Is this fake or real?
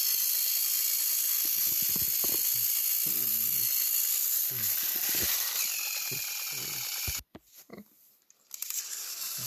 real